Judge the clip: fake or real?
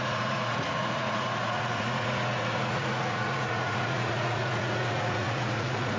fake